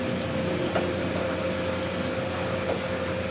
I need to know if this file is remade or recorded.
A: recorded